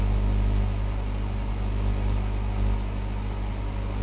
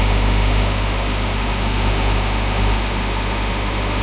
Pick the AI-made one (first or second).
second